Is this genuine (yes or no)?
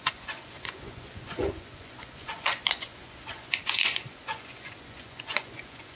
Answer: no